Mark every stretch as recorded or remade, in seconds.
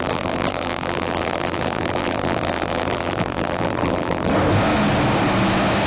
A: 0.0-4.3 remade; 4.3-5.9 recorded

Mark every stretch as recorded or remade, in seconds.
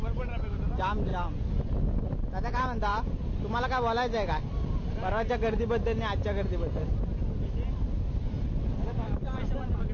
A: 0.0-9.9 recorded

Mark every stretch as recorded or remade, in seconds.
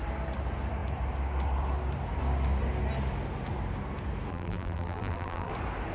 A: 0.0-4.3 recorded; 4.3-5.5 remade; 5.5-5.9 recorded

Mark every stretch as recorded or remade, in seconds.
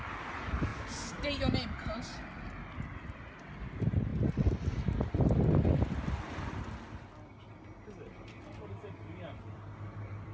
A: 0.0-10.3 recorded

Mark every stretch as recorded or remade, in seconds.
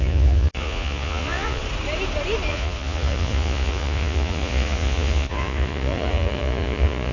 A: 0.0-1.6 remade; 1.6-2.5 recorded; 2.5-7.1 remade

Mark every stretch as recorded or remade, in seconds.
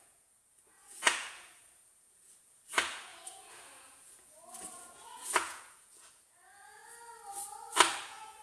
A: 0.0-6.8 remade; 6.8-8.0 recorded; 8.0-8.4 remade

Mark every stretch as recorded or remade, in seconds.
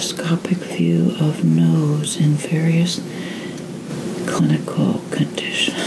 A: 0.0-1.4 recorded; 1.4-3.4 remade; 3.4-5.9 recorded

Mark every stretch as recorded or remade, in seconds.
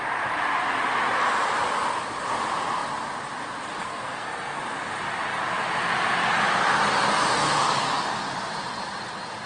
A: 0.0-3.8 recorded; 3.8-4.6 remade; 4.6-9.5 recorded